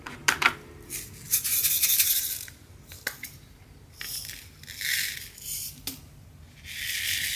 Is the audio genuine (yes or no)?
yes